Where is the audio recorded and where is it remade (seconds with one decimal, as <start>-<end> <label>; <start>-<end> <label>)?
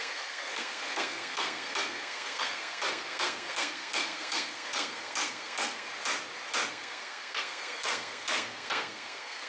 0.0-5.9 remade; 5.9-6.7 recorded; 6.7-9.5 remade